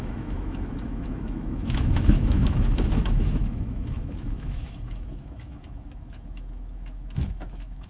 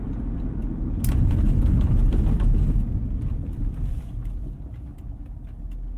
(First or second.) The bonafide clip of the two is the second